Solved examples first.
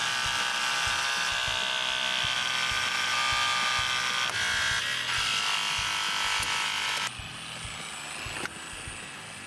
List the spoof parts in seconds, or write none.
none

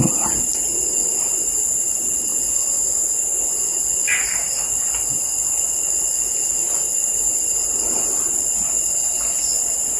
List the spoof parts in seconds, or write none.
0.0-2.3 (vocoder, BigVGAN v2); 6.7-10.0

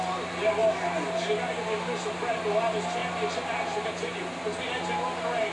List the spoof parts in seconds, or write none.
none

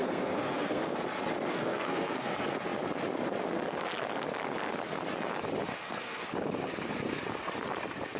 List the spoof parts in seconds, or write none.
0.0-1.0 (codec, SNAC); 1.5-2.3; 5.7-6.3

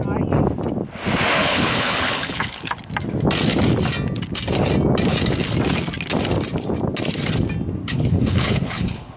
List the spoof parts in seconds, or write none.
1.4-2.9 (codec, HILCodec); 7.8-9.2